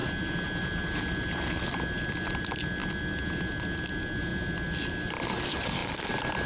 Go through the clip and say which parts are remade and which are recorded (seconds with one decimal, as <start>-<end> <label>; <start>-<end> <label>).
0.0-6.5 recorded